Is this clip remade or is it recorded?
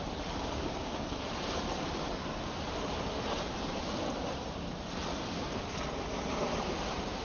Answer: remade